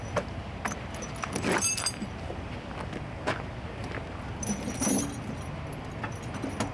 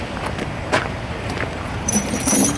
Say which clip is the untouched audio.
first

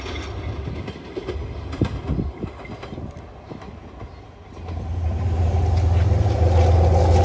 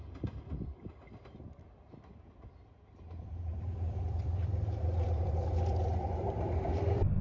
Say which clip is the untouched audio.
first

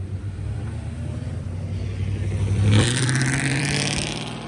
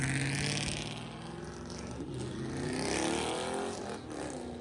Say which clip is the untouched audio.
second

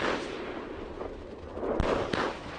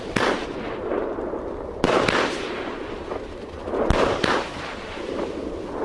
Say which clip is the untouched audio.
first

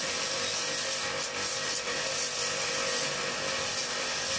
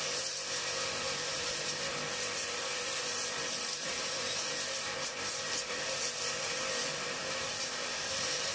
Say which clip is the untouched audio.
first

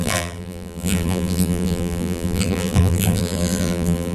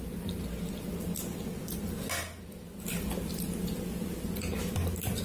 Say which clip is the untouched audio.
second